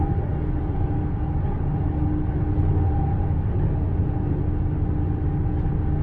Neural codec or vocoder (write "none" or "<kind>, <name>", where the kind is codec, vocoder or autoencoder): none